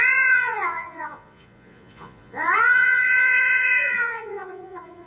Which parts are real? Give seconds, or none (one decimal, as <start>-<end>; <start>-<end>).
none